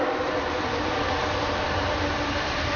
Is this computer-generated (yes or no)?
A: yes